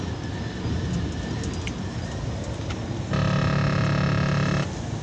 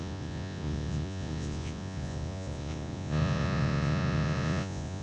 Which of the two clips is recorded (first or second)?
first